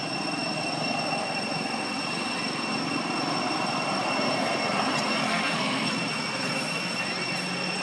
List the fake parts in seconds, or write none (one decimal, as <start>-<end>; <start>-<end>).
5.2-5.9